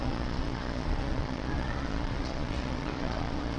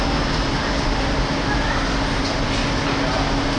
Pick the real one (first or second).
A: second